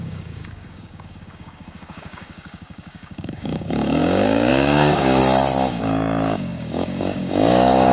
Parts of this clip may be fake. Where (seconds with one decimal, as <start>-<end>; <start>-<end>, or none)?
0.0-5.2; 5.7-7.9